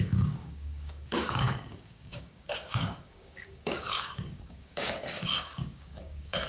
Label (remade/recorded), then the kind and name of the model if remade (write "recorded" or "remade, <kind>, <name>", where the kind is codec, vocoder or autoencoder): remade, codec, DAC